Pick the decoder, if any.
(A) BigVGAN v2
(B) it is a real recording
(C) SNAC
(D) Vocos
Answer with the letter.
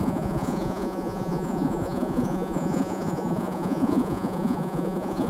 D